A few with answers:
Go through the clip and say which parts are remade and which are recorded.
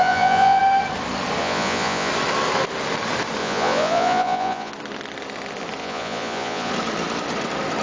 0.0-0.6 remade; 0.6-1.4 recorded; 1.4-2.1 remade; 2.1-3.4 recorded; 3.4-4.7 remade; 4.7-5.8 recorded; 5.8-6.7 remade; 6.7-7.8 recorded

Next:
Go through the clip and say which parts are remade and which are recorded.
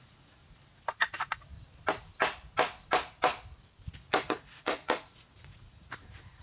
0.0-0.4 remade; 0.4-3.9 recorded; 3.9-6.4 remade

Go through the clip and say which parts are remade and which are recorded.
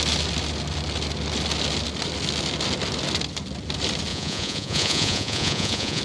0.0-4.1 recorded; 4.1-6.0 remade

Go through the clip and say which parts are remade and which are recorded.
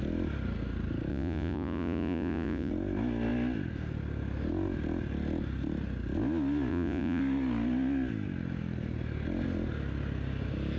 0.0-1.1 recorded; 1.1-2.7 remade; 2.7-6.7 recorded; 6.7-7.2 remade; 7.2-10.8 recorded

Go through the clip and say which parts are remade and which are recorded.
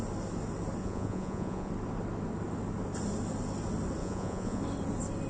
0.0-0.8 recorded; 0.8-1.7 remade; 1.7-4.0 recorded; 4.0-4.6 remade; 4.6-5.3 recorded